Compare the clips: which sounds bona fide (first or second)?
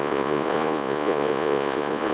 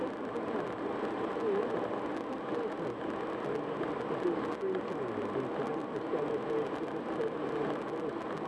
second